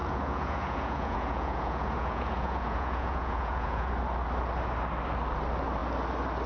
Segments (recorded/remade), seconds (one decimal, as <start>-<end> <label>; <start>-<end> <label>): 0.0-3.9 remade; 3.9-6.5 recorded